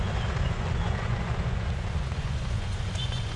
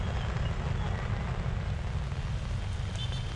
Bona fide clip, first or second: second